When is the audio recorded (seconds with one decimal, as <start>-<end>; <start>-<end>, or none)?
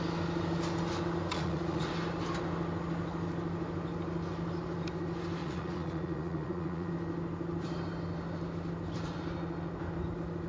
0.0-1.3; 1.9-5.4; 6.9-10.5